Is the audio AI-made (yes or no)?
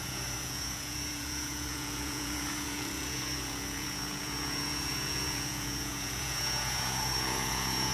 yes